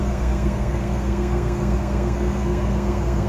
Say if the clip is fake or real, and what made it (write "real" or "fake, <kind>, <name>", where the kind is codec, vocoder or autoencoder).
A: fake, codec, SNAC